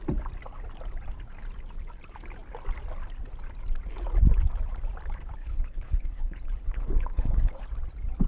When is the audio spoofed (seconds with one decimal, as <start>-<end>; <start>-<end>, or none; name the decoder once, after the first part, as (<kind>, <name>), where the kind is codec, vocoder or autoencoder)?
5.4-7.7 (codec, HILCodec)